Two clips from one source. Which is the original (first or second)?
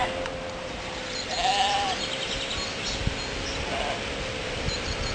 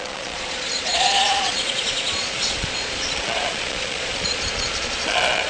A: first